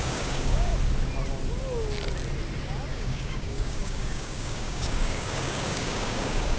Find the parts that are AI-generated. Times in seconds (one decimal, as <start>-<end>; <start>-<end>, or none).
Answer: 0.0-0.7; 2.9-6.6

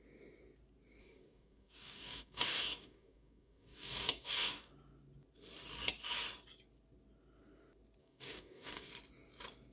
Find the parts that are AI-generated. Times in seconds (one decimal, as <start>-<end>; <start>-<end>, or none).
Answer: 1.0-4.7; 8.0-8.9

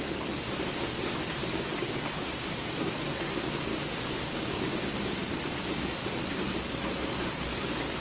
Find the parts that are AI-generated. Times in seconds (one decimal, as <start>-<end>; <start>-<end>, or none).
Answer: 1.4-2.7; 3.7-4.9

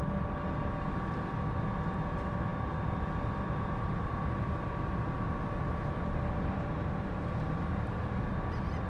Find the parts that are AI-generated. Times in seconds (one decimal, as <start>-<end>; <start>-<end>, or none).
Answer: none